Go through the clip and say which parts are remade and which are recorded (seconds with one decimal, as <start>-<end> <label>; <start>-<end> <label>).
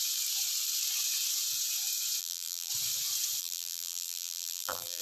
0.0-2.2 recorded; 2.2-2.7 remade; 2.7-3.4 recorded; 3.4-5.0 remade